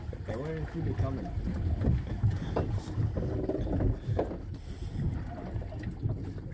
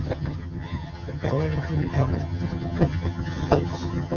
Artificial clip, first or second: second